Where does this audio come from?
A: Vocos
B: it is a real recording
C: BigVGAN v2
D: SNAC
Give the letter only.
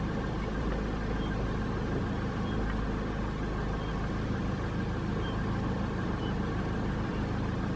C